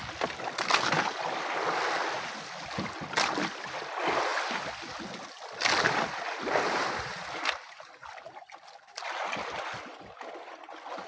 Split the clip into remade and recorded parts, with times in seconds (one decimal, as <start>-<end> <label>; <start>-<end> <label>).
0.0-11.1 recorded